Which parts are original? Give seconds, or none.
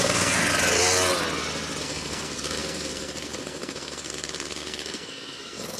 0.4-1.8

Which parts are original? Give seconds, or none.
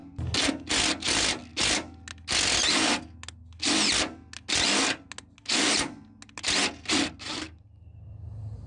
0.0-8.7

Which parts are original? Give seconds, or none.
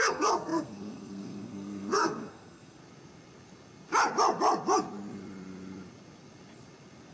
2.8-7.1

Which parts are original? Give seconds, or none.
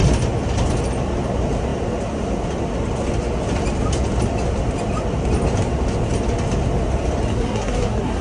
0.0-7.3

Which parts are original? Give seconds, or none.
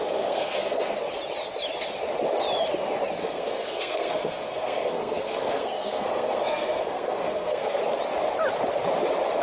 1.0-3.2; 7.8-9.4